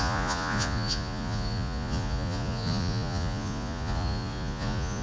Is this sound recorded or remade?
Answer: remade